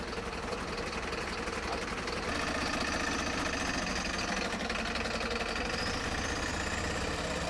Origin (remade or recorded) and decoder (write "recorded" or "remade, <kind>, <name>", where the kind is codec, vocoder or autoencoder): recorded